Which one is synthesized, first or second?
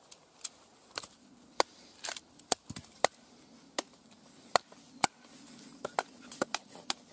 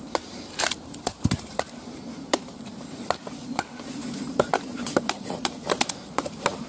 second